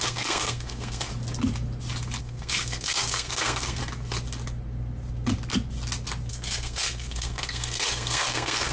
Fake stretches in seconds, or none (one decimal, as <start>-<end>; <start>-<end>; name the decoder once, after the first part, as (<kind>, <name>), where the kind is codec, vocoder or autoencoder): 0.0-1.1 (codec, SNAC); 2.2-3.8; 6.3-8.7

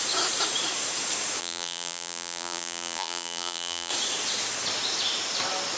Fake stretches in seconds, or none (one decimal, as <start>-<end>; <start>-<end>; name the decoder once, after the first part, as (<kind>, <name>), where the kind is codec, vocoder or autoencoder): 1.4-3.9 (vocoder, BigVGAN v2)

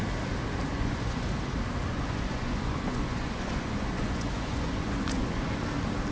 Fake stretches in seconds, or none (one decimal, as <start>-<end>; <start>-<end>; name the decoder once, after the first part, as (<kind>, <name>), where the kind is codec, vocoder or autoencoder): 0.7-1.3 (vocoder, Vocos); 1.9-5.6

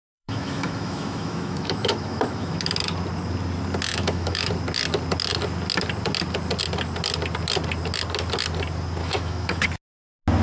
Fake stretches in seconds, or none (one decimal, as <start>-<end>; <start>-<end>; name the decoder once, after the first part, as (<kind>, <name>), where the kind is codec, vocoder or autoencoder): 0.0-2.6 (autoencoder, DAC-VAE); 3.9-4.5; 9.0-9.6

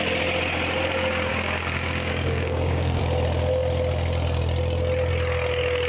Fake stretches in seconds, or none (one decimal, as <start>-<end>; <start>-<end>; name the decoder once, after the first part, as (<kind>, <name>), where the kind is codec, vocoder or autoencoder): 1.3-3.0 (codec, DAC)

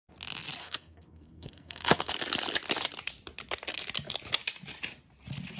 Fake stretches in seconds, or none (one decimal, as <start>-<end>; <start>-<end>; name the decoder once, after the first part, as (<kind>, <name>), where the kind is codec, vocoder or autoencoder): 0.6-2.1 (codec, SNAC)

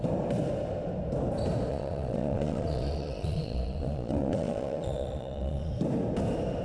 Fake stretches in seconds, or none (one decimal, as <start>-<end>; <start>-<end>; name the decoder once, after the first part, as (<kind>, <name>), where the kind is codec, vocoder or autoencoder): 1.7-5.7 (vocoder, Vocos)